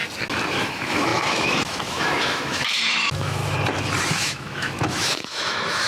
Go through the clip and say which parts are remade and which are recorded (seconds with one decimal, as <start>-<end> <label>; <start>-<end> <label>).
0.0-0.5 recorded; 0.5-3.4 remade; 3.4-4.0 recorded; 4.0-5.9 remade